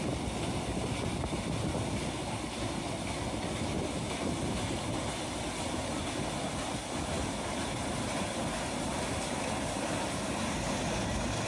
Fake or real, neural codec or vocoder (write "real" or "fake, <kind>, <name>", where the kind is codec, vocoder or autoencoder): real